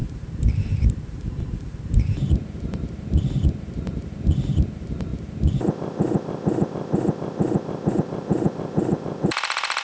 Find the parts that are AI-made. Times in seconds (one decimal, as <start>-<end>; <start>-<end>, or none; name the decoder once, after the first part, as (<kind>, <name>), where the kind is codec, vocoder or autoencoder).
0.0-5.1 (vocoder, BigVGAN v2); 7.9-9.8